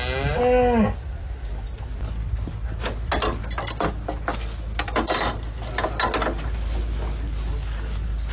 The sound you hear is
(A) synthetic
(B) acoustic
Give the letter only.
B